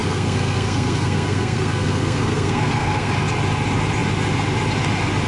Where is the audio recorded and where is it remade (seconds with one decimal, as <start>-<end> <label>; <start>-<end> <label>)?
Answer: 0.0-3.1 remade; 3.1-5.3 recorded